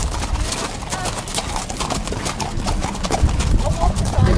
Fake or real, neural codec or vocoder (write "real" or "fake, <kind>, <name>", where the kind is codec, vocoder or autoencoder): real